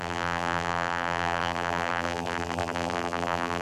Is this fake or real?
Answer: fake